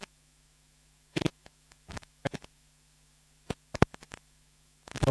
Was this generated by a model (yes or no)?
yes